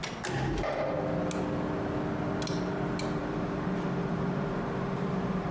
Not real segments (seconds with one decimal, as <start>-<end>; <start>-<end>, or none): 3.2-5.5